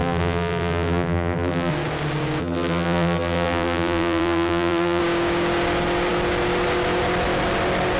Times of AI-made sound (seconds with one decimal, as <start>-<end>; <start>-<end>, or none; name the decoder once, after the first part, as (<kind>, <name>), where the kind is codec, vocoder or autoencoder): 0.0-1.7 (vocoder, BigVGAN v2); 2.4-5.0